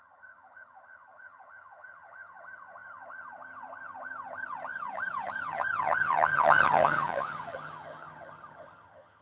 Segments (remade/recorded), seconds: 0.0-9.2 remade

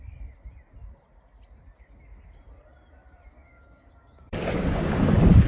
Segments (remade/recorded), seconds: 0.0-3.4 recorded; 3.4-5.1 remade; 5.1-5.5 recorded

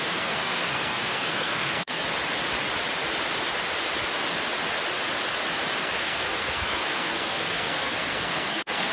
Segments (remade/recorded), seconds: 0.0-2.0 remade; 2.0-5.8 recorded; 5.8-8.9 remade

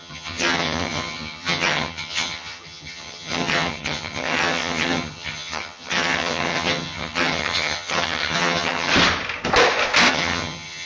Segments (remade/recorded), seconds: 0.0-8.9 remade; 8.9-10.1 recorded; 10.1-10.9 remade

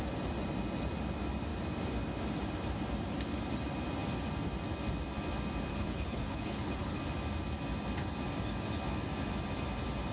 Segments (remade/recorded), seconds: 0.0-5.7 recorded; 5.7-7.0 remade; 7.0-10.1 recorded

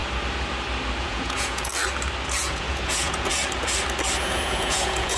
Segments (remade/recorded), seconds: 0.0-1.0 recorded; 1.0-1.7 remade; 1.7-2.4 recorded; 2.4-3.3 remade; 3.3-4.2 recorded; 4.2-5.2 remade

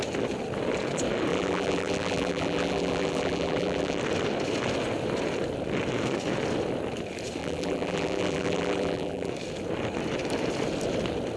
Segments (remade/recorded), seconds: 0.0-1.3 recorded; 1.3-4.0 remade; 4.0-7.4 recorded; 7.4-9.3 remade; 9.3-11.4 recorded

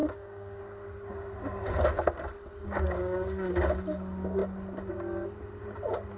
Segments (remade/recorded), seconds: 0.0-0.6 remade; 0.6-2.6 recorded; 2.6-3.5 remade; 3.5-6.2 recorded